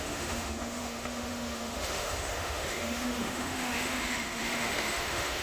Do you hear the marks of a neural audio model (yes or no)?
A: yes